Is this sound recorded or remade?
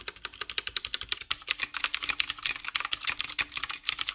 recorded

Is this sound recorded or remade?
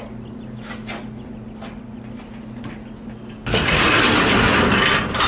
recorded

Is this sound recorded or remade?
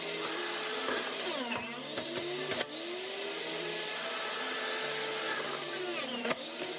recorded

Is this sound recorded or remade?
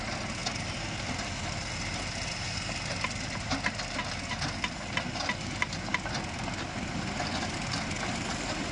recorded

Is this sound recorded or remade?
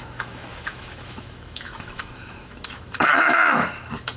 remade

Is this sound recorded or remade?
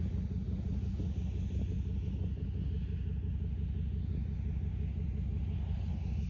recorded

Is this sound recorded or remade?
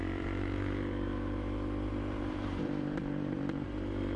remade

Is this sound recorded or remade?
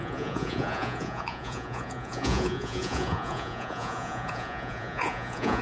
remade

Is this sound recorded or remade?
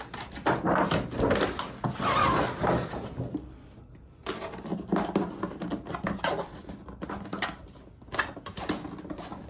recorded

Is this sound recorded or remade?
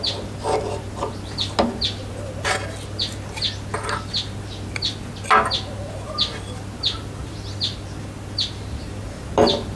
recorded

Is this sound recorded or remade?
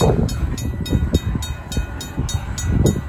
recorded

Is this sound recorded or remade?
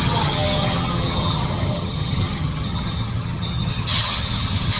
remade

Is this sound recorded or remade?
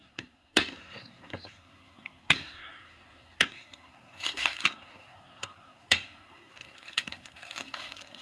remade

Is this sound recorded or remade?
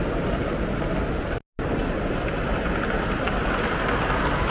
recorded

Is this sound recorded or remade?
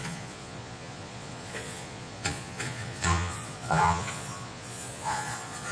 remade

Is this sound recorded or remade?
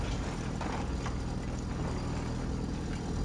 recorded